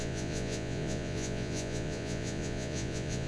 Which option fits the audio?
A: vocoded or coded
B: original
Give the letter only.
A